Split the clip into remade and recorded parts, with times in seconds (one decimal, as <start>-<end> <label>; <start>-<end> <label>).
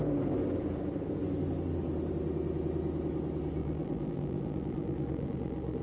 0.0-3.6 recorded; 3.6-5.8 remade